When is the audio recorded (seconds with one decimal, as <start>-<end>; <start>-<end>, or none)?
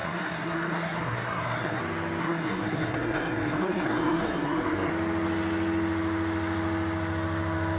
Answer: 1.8-2.2; 4.9-7.8